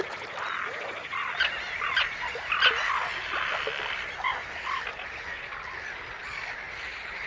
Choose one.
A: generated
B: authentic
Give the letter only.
B